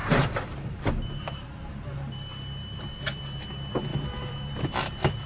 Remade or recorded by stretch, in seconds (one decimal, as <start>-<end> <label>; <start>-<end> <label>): 0.0-3.2 remade; 3.2-3.9 recorded; 3.9-5.3 remade